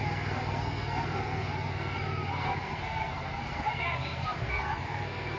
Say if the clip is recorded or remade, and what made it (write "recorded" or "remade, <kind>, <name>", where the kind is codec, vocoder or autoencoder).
remade, codec, SNAC